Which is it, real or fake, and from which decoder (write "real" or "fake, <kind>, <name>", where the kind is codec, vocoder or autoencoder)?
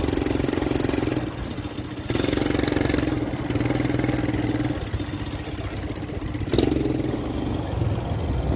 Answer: real